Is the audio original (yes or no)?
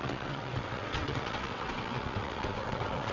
no